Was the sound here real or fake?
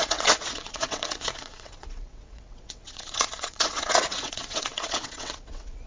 fake